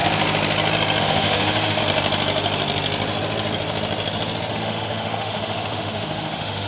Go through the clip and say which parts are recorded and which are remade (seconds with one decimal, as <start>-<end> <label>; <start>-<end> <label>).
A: 0.0-1.0 recorded; 1.0-1.8 remade; 1.8-4.5 recorded; 4.5-6.7 remade